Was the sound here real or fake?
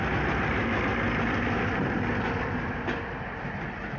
real